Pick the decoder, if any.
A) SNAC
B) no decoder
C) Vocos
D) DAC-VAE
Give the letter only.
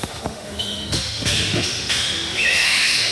D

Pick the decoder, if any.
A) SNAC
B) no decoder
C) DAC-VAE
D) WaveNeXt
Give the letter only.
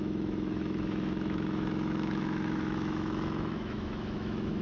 C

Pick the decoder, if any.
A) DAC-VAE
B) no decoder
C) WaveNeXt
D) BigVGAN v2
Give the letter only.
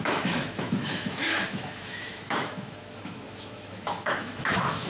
A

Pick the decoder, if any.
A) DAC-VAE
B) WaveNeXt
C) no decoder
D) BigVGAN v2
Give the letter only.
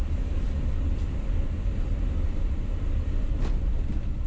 C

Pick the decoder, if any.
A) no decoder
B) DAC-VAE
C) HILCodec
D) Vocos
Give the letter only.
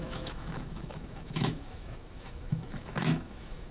B